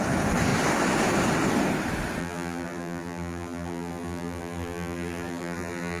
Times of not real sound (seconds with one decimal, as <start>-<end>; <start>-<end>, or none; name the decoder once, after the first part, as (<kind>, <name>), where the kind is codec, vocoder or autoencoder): 2.2-6.0 (vocoder, BigVGAN v2)